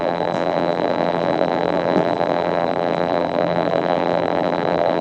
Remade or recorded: remade